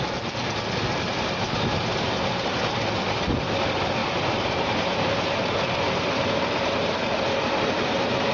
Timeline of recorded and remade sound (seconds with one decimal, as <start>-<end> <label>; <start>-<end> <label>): 0.0-4.0 recorded; 4.0-5.0 remade; 5.0-8.3 recorded